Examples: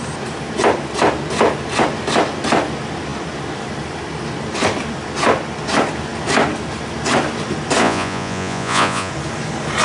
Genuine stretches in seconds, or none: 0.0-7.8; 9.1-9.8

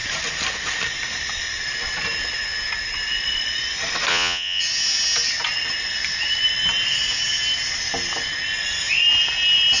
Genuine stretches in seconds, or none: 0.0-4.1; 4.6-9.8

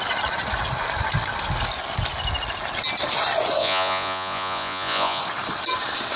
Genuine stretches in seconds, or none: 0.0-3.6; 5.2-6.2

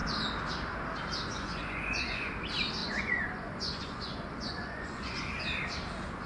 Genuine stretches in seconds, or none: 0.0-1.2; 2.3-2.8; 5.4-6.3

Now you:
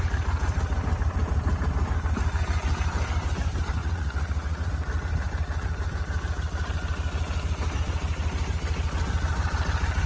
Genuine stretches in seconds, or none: 0.0-3.8; 4.7-10.1

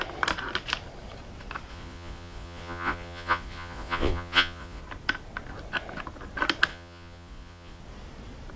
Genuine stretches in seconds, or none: 0.0-1.7; 4.8-6.7; 7.8-8.6